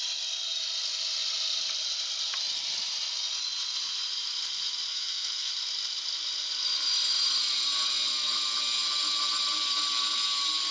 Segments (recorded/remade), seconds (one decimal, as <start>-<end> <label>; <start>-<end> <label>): 0.0-4.9 recorded; 4.9-5.5 remade; 5.5-10.7 recorded